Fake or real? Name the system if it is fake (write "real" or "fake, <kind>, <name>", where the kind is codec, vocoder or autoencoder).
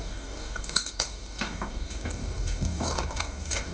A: fake, codec, DAC